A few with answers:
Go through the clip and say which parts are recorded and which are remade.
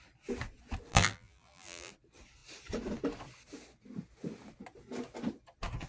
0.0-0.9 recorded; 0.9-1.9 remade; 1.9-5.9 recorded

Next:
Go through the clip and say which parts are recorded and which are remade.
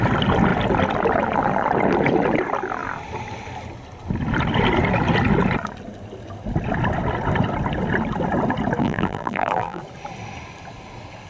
0.0-8.8 recorded; 8.8-9.8 remade; 9.8-11.3 recorded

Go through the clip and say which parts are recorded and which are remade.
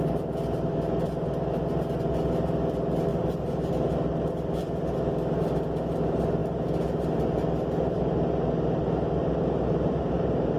0.0-3.1 recorded; 3.1-3.7 remade; 3.7-9.2 recorded; 9.2-10.6 remade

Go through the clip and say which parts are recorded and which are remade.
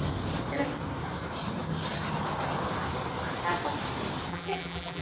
0.0-4.3 recorded; 4.3-5.0 remade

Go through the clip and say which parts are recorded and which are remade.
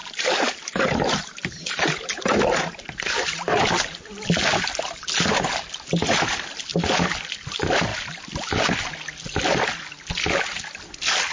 0.0-3.4 remade; 3.4-11.3 recorded